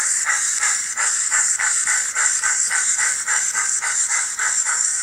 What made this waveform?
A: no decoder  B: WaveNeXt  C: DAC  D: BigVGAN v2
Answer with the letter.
C